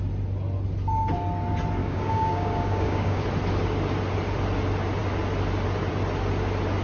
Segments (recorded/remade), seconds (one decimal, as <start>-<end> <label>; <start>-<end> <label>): 0.0-1.8 recorded; 1.8-3.2 remade; 3.2-6.8 recorded